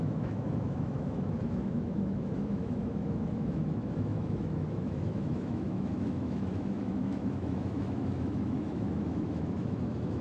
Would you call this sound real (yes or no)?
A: no